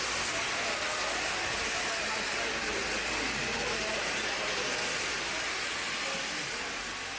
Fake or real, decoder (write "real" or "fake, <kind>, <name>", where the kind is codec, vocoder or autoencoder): real